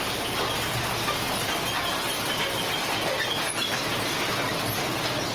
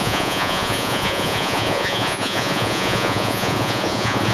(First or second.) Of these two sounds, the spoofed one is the second